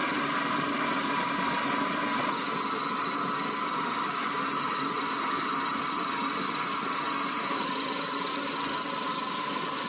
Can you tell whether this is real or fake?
real